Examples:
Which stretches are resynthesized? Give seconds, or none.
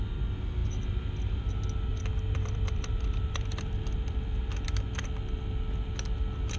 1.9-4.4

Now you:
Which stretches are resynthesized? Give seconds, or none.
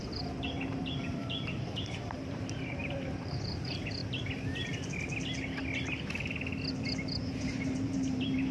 0.0-4.0; 6.7-8.5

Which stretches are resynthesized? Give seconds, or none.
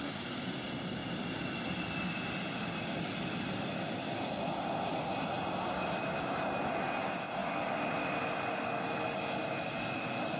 none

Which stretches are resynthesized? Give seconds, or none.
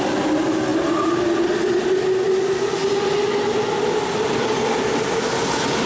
none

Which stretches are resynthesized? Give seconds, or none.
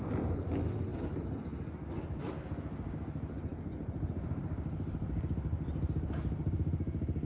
none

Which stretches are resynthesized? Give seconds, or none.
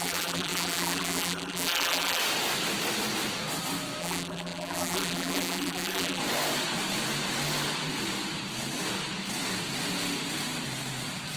0.0-2.2; 4.0-6.2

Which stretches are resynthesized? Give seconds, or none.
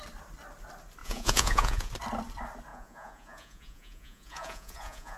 1.0-1.9; 2.7-5.2